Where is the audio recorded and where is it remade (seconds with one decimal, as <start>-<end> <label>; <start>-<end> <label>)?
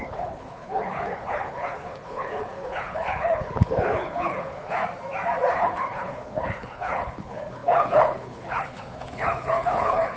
0.0-4.8 remade; 4.8-5.5 recorded; 5.5-10.2 remade